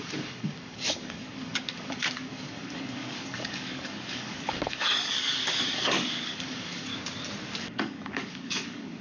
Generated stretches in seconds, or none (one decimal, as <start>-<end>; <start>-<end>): 0.0-6.9; 7.6-9.0